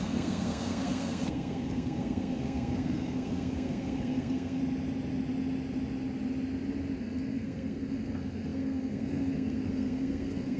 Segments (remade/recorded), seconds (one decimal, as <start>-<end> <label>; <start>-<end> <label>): 0.0-4.6 remade; 4.6-7.0 recorded; 7.0-10.6 remade